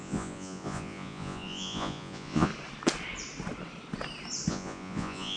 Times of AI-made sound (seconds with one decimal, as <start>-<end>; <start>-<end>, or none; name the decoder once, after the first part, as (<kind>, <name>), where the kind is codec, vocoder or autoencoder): 0.0-2.5 (vocoder, Vocos); 4.5-5.4